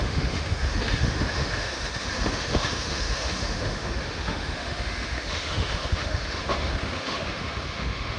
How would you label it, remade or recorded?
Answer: remade